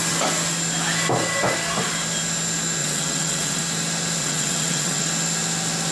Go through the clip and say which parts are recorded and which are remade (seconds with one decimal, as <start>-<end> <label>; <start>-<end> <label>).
0.0-2.8 recorded; 2.8-3.6 remade; 3.6-4.2 recorded; 4.2-5.1 remade; 5.1-5.9 recorded